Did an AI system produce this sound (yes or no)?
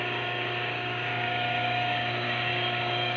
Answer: yes